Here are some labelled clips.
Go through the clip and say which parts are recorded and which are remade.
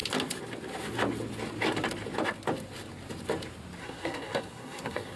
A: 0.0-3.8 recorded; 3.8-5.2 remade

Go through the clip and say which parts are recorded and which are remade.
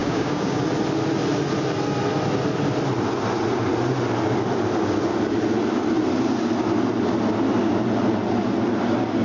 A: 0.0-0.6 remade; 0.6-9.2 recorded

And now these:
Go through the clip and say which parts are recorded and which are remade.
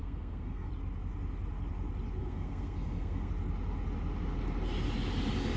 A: 0.0-0.7 remade; 0.7-2.2 recorded; 2.2-3.3 remade; 3.3-5.6 recorded